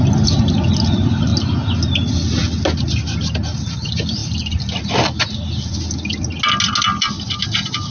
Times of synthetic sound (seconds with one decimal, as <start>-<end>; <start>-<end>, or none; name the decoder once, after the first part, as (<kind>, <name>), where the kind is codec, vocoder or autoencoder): none